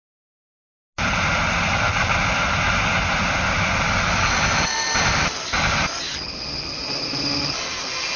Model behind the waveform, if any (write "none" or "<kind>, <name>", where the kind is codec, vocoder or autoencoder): none